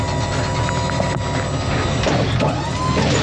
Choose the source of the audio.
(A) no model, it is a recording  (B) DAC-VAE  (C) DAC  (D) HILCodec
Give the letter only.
A